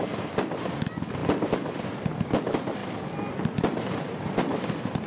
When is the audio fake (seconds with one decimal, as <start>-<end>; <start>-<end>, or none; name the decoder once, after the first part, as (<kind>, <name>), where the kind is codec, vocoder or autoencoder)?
none